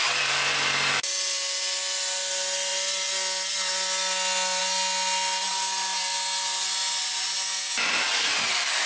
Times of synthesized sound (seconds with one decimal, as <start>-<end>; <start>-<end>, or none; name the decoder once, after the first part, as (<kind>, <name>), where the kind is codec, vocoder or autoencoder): none